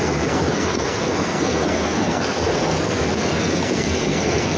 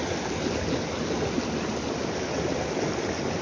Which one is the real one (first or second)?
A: second